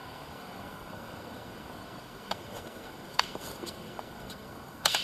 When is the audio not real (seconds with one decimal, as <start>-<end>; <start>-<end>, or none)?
0.0-5.0